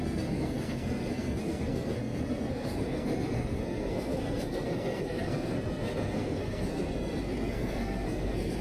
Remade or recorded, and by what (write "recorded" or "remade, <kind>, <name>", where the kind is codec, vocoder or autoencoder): remade, codec, SNAC